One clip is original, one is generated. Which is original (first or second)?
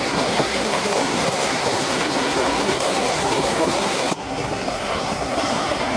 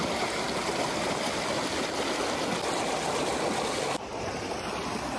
second